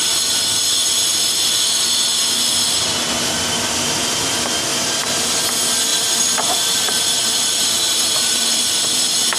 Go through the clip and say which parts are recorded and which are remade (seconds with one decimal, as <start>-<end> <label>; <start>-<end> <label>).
0.0-4.7 recorded; 4.7-5.4 remade; 5.4-5.9 recorded; 5.9-8.6 remade; 8.6-9.4 recorded